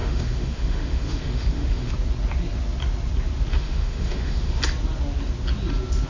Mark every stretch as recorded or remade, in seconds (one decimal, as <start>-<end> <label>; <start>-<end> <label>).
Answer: 0.0-1.9 remade; 1.9-3.5 recorded; 3.5-4.6 remade; 4.6-6.1 recorded